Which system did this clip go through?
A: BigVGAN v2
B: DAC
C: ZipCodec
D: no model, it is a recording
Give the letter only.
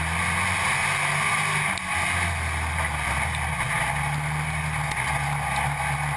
D